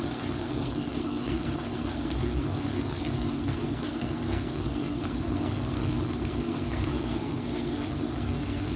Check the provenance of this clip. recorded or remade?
remade